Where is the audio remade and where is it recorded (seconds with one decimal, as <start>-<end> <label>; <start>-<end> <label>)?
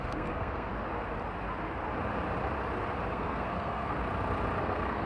0.0-0.7 remade; 0.7-3.1 recorded; 3.1-4.0 remade; 4.0-4.6 recorded; 4.6-5.1 remade